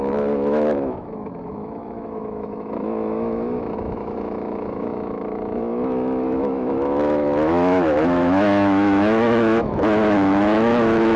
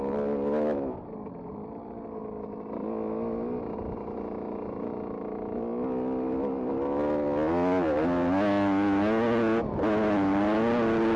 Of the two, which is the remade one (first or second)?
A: first